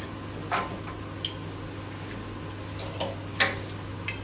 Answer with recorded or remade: recorded